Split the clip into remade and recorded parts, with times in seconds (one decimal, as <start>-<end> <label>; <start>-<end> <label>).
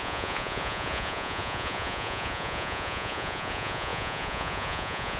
0.0-5.2 remade